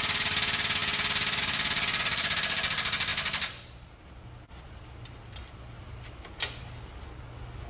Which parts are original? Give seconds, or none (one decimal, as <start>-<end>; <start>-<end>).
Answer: 0.0-7.7